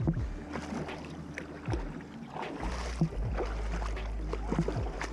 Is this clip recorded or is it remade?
recorded